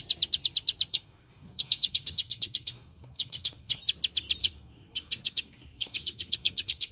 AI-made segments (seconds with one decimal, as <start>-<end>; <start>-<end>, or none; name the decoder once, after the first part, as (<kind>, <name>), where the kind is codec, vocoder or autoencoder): 0.9-3.8 (codec, SNAC); 4.4-6.9